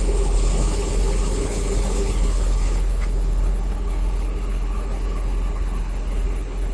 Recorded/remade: remade